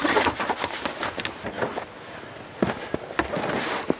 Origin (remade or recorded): recorded